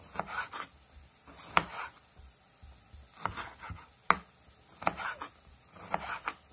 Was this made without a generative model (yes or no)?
yes